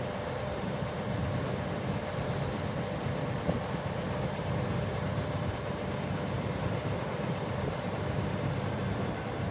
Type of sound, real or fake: fake